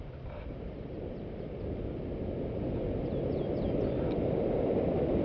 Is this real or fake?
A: real